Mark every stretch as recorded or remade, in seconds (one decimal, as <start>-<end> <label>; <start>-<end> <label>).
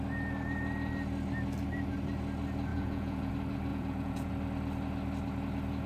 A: 0.0-2.7 recorded; 2.7-3.3 remade; 3.3-3.7 recorded; 3.7-4.3 remade; 4.3-5.9 recorded